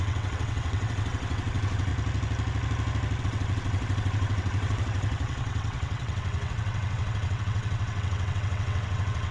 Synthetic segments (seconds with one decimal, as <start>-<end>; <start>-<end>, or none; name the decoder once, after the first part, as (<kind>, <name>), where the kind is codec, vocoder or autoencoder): 0.0-1.9 (vocoder, WaveNeXt); 3.2-9.3